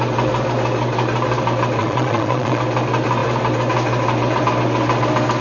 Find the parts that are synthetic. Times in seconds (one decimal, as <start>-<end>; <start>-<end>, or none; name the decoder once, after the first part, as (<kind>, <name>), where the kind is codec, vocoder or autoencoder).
1.8-2.6 (vocoder, Vocos)

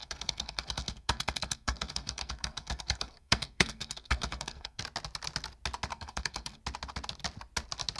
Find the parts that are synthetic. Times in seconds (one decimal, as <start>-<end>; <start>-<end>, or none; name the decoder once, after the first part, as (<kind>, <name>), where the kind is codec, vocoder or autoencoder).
0.0-4.8 (codec, SNAC); 5.9-6.6

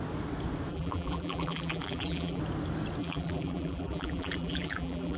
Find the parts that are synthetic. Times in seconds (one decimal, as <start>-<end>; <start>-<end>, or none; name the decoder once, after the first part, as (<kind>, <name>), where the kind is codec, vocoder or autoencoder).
0.7-2.4 (vocoder, BigVGAN v2); 3.0-5.2

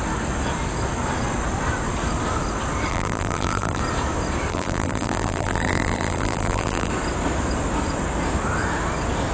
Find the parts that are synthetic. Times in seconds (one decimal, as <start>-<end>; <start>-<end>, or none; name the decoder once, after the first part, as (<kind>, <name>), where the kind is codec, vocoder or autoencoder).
2.9-3.8 (vocoder, BigVGAN v2); 4.5-6.9